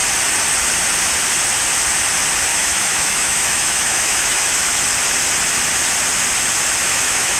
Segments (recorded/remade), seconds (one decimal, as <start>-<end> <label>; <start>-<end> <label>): 0.0-2.5 recorded; 2.5-4.7 remade; 4.7-6.8 recorded; 6.8-7.4 remade